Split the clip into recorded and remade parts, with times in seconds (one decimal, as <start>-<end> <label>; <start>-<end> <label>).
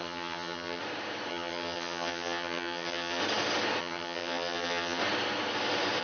0.0-0.8 remade; 0.8-1.3 recorded; 1.3-3.2 remade; 3.2-3.8 recorded; 3.8-5.0 remade; 5.0-6.0 recorded